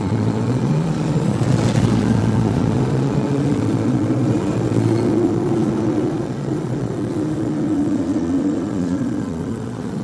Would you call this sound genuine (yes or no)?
no